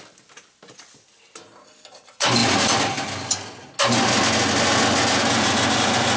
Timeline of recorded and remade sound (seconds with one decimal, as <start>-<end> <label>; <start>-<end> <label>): 0.0-6.2 recorded